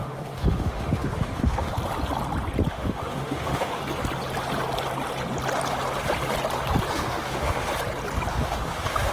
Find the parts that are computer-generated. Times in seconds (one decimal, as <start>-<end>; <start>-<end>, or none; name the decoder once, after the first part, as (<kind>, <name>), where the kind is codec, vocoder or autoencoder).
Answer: 0.0-1.7 (autoencoder, DAC-VAE); 2.7-3.8; 6.9-7.7; 8.3-9.1